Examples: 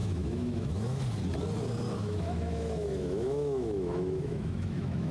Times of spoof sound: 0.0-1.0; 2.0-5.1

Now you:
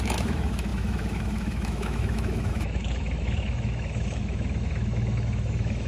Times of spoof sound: 0.0-5.9

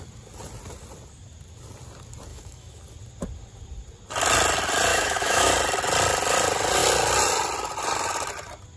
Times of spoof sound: 2.3-2.8; 4.9-5.5

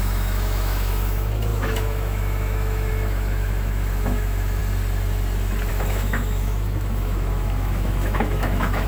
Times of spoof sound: 0.0-4.6; 5.7-8.9

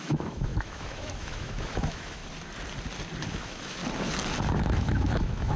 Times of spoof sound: 0.0-2.2; 3.3-3.8; 4.5-5.6

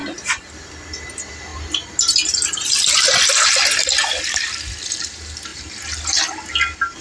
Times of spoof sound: none

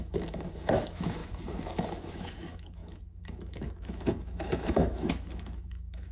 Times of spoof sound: 0.0-6.1